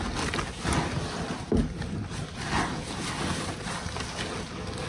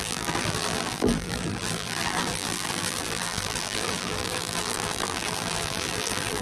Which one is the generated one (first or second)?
second